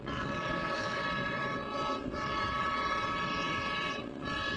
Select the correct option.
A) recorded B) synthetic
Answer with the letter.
B